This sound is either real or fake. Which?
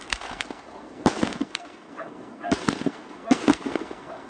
fake